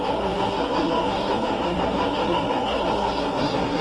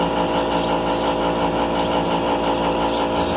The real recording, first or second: second